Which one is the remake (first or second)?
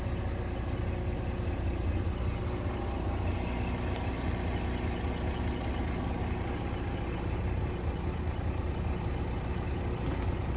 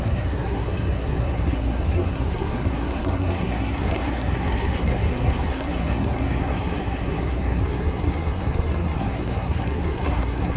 second